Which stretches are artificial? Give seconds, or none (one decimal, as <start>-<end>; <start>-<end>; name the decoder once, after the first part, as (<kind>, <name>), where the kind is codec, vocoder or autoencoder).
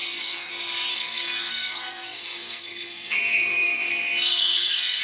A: 0.0-0.5 (codec, SNAC); 0.9-3.9; 4.3-5.0